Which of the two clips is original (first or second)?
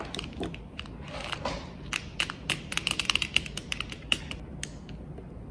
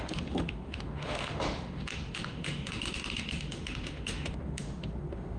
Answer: first